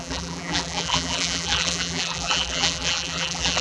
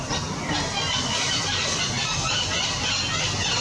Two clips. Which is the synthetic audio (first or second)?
first